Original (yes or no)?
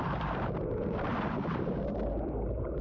no